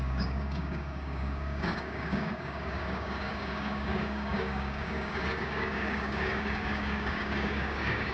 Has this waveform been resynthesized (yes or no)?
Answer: yes